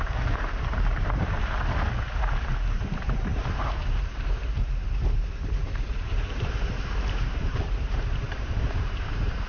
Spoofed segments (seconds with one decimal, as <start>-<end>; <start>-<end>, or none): 0.0-1.4; 2.2-9.5